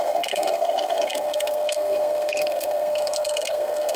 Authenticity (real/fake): fake